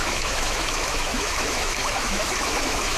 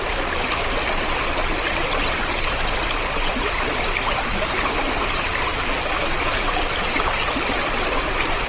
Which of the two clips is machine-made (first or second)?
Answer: first